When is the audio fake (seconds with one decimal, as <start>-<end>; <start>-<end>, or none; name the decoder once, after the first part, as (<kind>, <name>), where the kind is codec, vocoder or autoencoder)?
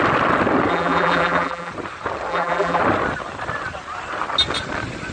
0.7-1.7 (vocoder, BigVGAN v2); 2.3-2.8